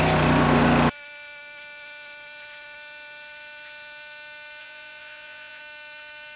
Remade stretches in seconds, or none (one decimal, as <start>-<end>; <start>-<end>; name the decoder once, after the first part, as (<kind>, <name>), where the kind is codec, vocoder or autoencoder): 4.6-5.6 (vocoder, Vocos)